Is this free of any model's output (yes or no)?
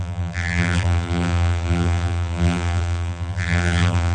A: no